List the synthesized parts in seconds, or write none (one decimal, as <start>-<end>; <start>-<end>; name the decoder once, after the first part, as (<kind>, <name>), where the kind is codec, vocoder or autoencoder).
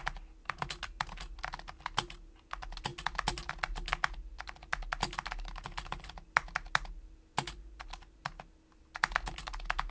none